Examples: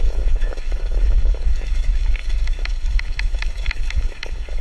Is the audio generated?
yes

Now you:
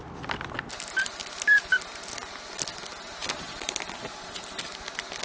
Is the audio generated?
no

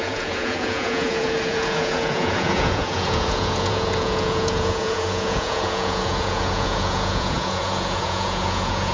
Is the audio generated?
yes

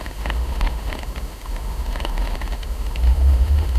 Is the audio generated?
yes